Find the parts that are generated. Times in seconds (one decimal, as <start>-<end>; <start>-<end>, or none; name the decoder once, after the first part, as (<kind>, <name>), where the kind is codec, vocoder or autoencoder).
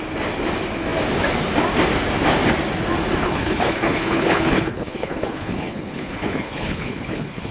3.2-7.5 (codec, HILCodec)